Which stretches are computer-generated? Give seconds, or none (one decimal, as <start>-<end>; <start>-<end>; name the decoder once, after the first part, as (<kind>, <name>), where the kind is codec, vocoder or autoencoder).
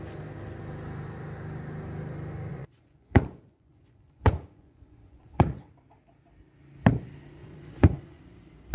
2.5-5.7 (vocoder, Vocos); 7.4-8.2